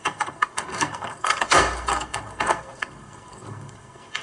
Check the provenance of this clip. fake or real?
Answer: fake